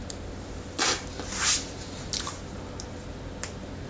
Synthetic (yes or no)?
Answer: no